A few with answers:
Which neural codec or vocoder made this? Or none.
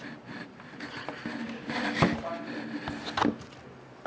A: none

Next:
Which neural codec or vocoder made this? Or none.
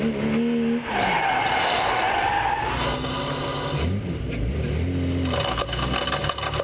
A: none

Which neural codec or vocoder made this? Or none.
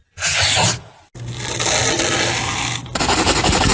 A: none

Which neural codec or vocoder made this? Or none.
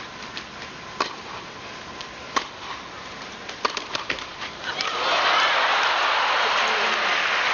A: none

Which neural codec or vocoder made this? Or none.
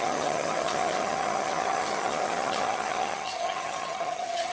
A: vocoder, HiFi-GAN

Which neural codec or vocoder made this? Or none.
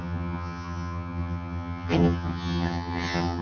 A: vocoder, HiFi-GAN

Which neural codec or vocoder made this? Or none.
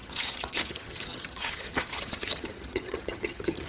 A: vocoder, HiFi-GAN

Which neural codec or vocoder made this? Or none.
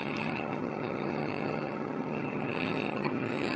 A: vocoder, HiFi-GAN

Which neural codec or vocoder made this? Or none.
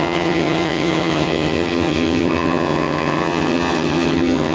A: vocoder, HiFi-GAN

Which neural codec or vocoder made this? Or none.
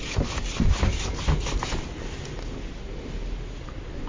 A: none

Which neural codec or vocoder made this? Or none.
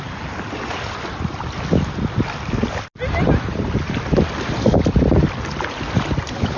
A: none